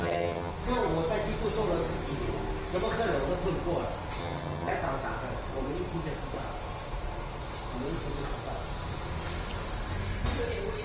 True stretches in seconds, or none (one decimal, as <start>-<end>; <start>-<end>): 0.5-4.2; 4.7-10.8